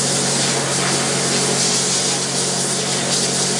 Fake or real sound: real